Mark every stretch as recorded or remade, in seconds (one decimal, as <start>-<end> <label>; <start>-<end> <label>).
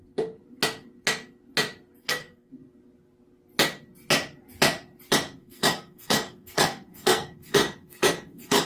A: 0.0-2.0 recorded; 2.0-2.5 remade; 2.5-5.4 recorded; 5.4-8.7 remade